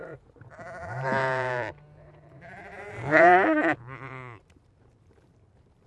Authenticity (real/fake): fake